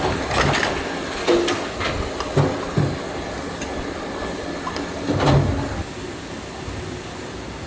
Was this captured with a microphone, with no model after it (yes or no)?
yes